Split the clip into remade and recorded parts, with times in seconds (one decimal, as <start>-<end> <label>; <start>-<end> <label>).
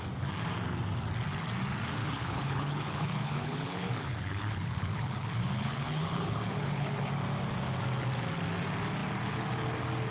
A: 0.0-2.0 recorded; 2.0-7.1 remade; 7.1-10.1 recorded